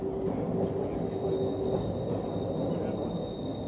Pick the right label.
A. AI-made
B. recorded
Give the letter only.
B